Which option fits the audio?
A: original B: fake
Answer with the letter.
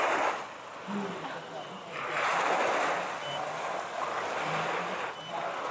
A